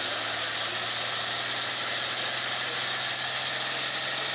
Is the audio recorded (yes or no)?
yes